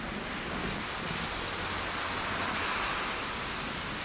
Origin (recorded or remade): recorded